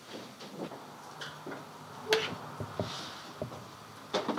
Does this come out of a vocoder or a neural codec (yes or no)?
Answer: no